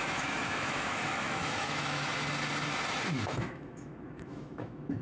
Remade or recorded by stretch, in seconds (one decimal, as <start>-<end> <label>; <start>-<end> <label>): 0.0-2.1 remade; 2.1-3.3 recorded; 3.3-5.0 remade